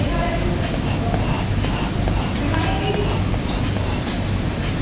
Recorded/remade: recorded